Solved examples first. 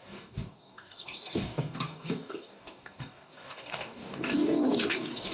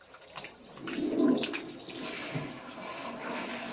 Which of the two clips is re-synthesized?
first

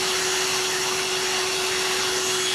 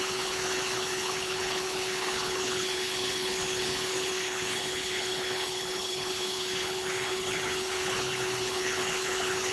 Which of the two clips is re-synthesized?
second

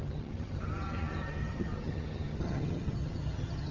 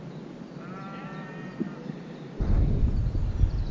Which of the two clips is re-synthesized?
first